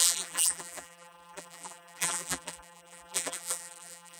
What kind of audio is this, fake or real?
fake